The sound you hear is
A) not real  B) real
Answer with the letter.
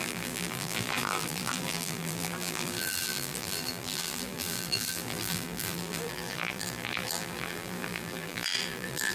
A